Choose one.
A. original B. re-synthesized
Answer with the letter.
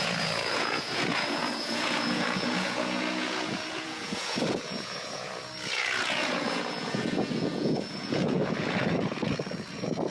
B